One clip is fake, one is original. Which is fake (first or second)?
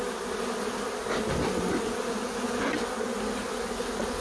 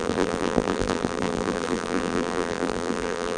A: second